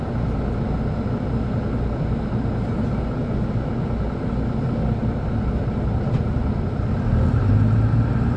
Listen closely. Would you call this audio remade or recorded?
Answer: recorded